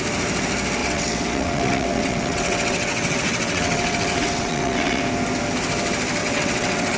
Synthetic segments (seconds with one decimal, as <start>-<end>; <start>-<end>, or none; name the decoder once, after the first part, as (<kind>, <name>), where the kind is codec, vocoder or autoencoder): 0.8-5.0 (vocoder, WaveNeXt); 6.2-7.0

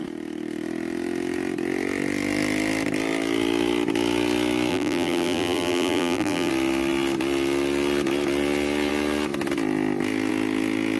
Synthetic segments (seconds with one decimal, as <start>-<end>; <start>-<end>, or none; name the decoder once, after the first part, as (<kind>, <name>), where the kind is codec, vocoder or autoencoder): 4.7-6.5 (vocoder, BigVGAN v2)